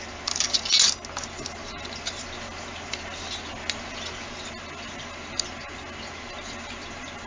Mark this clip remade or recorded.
recorded